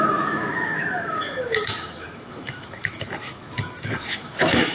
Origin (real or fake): fake